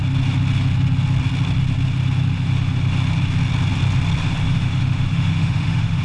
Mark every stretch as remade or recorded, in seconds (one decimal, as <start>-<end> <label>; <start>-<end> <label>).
0.0-4.4 recorded; 4.4-6.0 remade

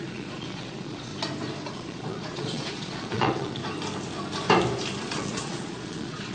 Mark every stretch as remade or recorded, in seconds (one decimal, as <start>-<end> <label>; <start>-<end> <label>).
0.0-1.1 remade; 1.1-1.7 recorded; 1.7-3.6 remade; 3.6-5.0 recorded; 5.0-6.3 remade

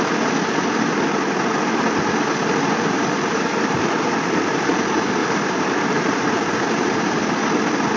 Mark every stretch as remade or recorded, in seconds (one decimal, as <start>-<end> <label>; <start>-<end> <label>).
0.0-2.4 recorded; 2.4-4.7 remade; 4.7-5.2 recorded; 5.2-7.2 remade; 7.2-8.0 recorded

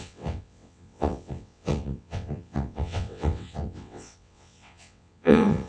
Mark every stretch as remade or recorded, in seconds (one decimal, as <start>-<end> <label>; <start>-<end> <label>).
0.0-5.7 remade